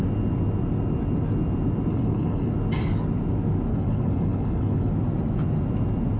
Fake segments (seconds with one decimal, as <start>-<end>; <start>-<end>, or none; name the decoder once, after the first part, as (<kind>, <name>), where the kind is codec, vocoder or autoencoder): 1.9-2.5 (codec, HILCodec); 3.7-4.9